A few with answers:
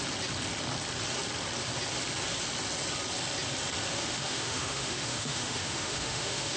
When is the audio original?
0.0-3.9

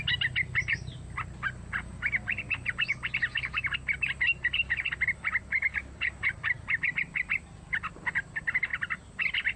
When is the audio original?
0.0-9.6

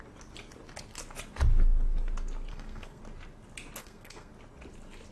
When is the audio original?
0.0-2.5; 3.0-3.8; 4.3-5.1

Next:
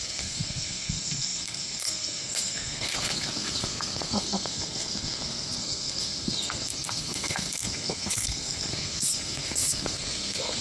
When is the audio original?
none

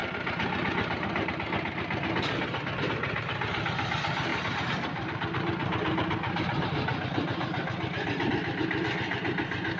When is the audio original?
1.3-3.0; 3.6-4.3; 8.3-9.8

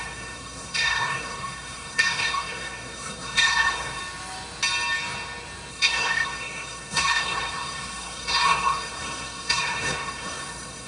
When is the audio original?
4.0-5.7

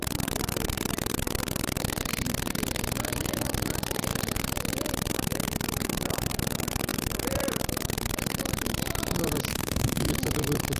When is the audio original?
0.0-9.5; 10.1-10.8

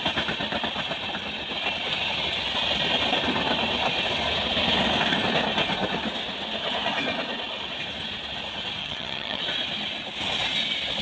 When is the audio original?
0.0-8.8; 9.4-11.0